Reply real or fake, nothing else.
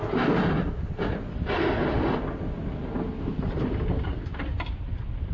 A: real